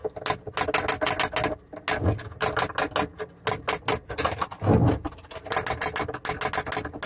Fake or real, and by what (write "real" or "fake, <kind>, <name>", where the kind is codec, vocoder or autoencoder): real